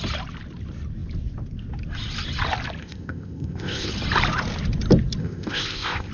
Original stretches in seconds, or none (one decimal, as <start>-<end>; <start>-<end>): 0.0-2.8; 3.9-5.2